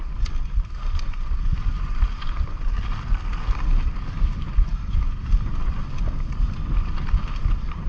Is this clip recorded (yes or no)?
yes